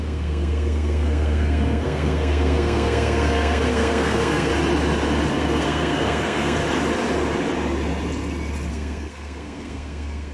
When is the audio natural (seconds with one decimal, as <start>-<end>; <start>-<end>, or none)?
4.5-5.3; 6.6-8.7

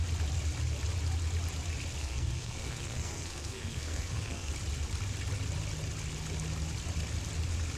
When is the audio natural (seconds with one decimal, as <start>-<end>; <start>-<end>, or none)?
0.0-2.0; 4.5-7.8

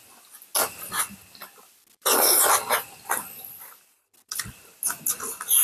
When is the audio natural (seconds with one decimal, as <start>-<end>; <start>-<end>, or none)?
0.0-5.6

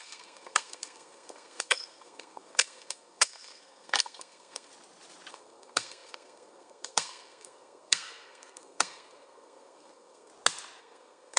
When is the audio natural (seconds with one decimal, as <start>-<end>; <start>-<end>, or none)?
4.7-5.3; 10.3-10.8

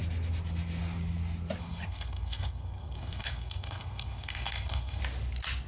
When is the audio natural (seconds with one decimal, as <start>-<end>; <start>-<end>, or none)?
0.0-1.6; 5.0-5.7

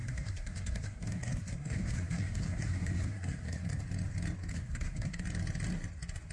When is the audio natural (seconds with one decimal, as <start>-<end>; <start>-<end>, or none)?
3.8-4.5; 5.2-6.3